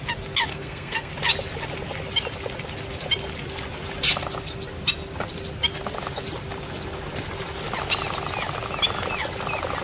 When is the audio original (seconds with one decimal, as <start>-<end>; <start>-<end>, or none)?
0.0-0.5; 1.1-9.8